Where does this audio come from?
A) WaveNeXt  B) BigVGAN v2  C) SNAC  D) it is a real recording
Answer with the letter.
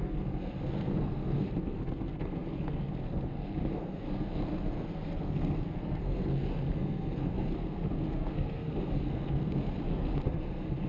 C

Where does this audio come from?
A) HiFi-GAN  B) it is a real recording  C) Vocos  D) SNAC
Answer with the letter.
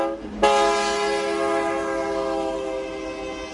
B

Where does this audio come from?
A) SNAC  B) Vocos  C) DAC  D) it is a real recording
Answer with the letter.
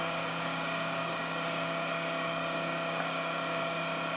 C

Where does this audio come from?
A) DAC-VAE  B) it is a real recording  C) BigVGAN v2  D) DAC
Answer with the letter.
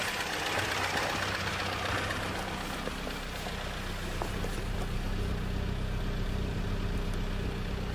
B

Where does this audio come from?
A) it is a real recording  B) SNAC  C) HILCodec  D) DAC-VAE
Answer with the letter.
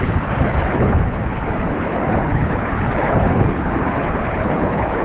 C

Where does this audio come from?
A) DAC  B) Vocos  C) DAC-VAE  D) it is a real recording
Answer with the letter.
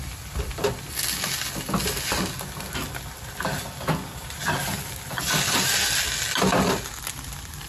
D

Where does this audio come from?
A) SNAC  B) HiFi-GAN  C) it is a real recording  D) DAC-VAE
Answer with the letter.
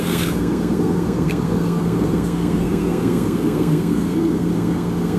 A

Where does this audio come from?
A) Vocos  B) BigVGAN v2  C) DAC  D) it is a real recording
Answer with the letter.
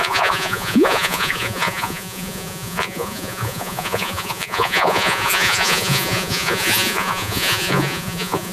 A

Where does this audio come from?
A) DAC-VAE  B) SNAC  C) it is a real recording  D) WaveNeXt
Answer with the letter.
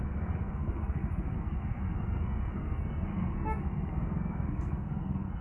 B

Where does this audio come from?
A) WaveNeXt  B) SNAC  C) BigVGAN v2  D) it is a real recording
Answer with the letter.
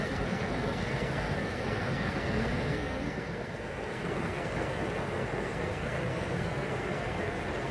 B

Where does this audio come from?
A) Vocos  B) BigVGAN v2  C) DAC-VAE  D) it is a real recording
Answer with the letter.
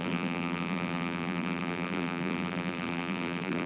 B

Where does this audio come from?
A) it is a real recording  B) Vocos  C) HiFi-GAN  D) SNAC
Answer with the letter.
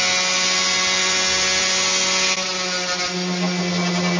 A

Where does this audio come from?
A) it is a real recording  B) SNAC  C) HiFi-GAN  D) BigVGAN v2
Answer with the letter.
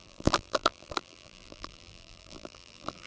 D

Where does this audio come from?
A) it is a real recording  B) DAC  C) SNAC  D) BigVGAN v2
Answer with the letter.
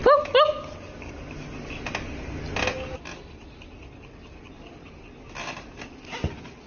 A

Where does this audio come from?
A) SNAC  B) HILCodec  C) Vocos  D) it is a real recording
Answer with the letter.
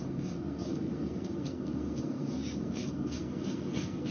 A